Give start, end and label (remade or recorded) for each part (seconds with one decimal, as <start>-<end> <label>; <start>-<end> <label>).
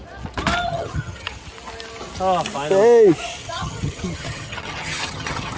0.0-0.7 recorded; 0.7-1.4 remade; 1.4-3.4 recorded; 3.4-5.6 remade